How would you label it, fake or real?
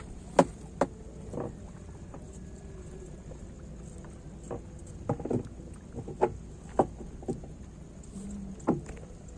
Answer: real